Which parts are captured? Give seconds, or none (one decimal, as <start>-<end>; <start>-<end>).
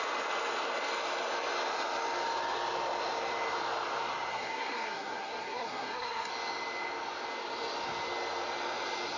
0.0-4.3; 6.3-9.2